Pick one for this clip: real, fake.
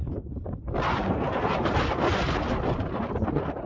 fake